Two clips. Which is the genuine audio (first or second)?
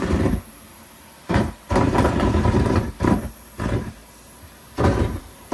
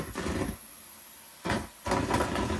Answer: second